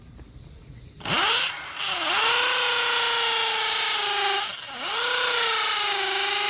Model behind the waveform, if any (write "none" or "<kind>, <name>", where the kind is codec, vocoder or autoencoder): none